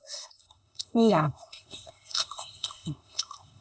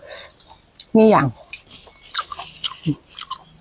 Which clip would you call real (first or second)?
second